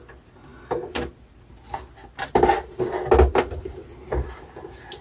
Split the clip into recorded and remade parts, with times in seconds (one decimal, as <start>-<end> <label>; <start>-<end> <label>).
0.0-5.0 recorded